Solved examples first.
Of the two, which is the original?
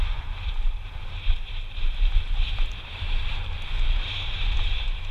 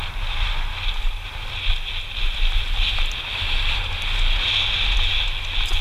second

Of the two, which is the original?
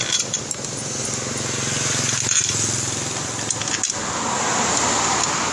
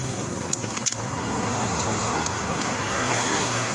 first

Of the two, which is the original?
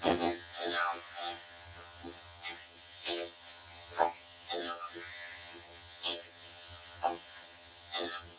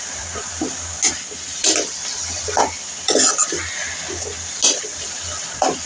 second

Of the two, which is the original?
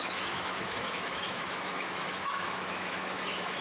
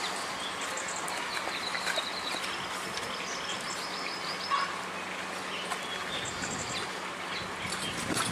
second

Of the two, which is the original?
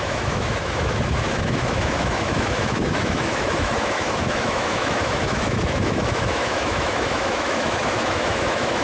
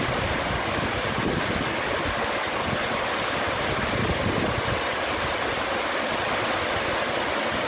second